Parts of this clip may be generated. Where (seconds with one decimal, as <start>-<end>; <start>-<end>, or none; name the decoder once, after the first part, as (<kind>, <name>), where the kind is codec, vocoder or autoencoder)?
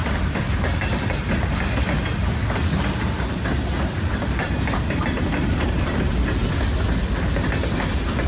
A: none